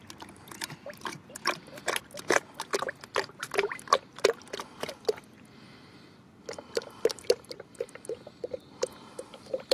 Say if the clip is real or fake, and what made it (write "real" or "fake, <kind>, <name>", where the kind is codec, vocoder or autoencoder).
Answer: real